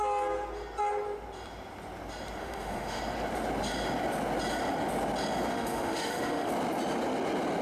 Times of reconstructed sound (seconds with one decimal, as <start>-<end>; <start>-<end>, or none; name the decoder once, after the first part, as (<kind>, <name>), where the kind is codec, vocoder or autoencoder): 2.4-3.0 (autoencoder, DAC-VAE); 5.5-6.5